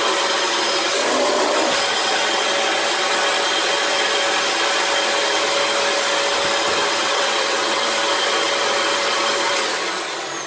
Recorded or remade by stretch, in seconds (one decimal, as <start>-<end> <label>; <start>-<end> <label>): 0.0-2.0 recorded; 2.0-2.5 remade; 2.5-7.0 recorded; 7.0-7.8 remade; 7.8-10.5 recorded

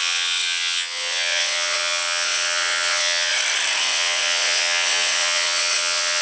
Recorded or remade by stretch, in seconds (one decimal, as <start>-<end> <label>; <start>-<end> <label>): 0.0-3.3 remade; 3.3-3.8 recorded; 3.8-6.2 remade

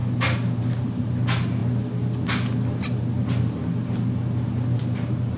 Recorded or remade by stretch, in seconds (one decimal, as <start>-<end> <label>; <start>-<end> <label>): 0.0-5.4 recorded